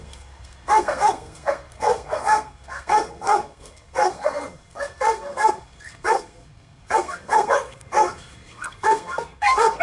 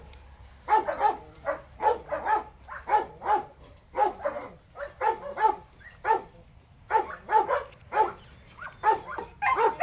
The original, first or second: second